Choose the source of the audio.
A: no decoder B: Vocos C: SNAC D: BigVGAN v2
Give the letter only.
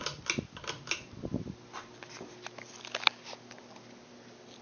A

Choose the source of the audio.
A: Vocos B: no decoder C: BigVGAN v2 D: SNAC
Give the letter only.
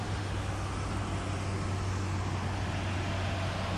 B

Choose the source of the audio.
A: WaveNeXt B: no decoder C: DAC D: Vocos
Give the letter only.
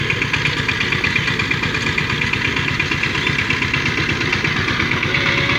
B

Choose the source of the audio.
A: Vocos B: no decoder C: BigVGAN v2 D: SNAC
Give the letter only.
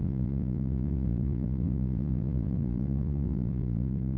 A